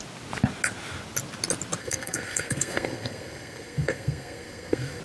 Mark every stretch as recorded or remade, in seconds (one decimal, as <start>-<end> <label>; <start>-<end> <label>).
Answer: 0.0-1.8 recorded; 1.8-5.0 remade